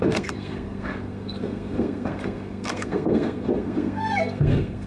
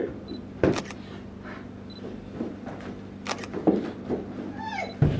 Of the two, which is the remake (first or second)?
first